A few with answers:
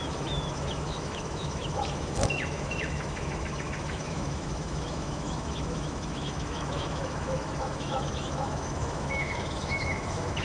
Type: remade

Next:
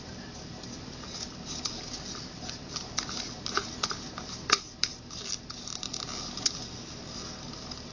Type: recorded